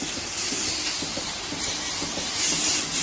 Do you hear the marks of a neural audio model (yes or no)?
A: no